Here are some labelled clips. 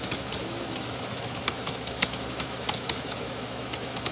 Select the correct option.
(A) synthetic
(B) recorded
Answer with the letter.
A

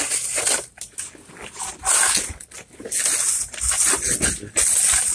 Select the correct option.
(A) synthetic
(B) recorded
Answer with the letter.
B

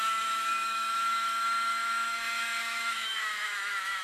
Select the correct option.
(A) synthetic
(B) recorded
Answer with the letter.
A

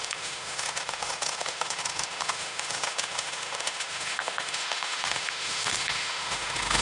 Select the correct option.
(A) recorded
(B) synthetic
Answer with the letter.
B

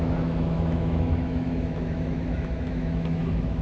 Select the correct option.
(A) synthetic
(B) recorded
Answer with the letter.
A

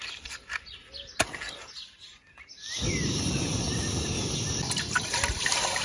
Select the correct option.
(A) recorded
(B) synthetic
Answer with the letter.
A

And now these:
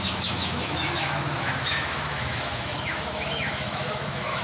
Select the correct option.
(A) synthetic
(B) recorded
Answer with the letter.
A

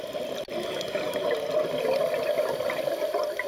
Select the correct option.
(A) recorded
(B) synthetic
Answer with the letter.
A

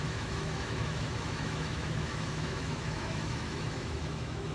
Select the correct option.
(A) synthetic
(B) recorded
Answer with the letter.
A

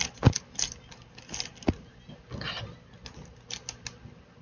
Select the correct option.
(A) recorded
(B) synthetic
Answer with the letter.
A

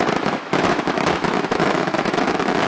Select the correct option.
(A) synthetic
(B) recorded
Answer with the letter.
A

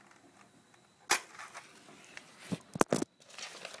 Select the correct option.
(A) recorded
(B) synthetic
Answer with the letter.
A